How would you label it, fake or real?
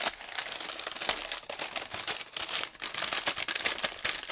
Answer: real